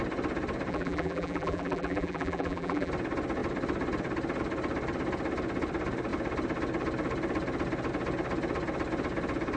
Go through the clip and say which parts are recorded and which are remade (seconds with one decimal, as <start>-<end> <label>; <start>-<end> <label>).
0.0-0.7 recorded; 0.7-2.9 remade; 2.9-9.6 recorded